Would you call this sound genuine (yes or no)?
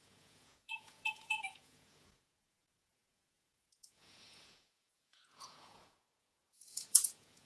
no